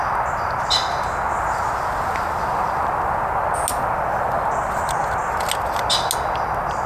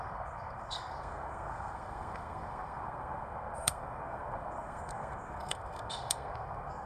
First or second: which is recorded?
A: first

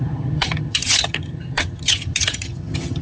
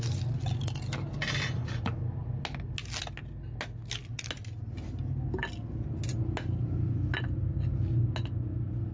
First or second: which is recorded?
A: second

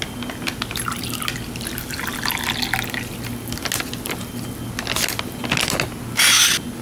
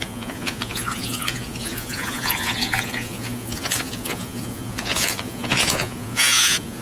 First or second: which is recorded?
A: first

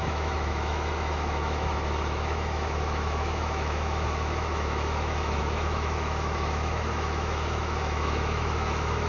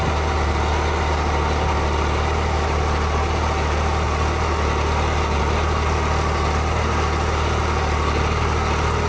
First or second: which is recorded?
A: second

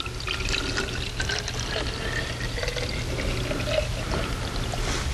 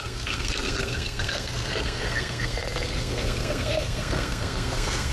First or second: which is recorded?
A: first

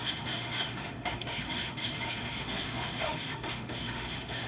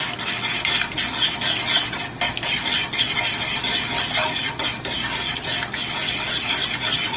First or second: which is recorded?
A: second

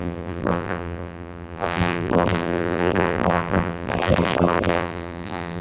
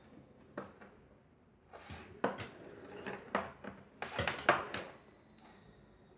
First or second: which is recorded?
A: second